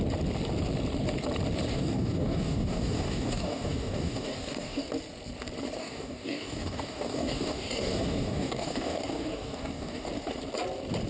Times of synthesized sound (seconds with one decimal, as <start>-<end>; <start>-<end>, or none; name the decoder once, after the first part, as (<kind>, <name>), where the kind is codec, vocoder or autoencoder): 1.7-4.9 (codec, DAC); 5.8-10.1